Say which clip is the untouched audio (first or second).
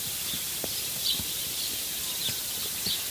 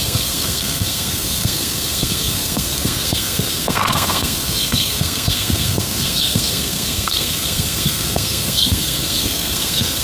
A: first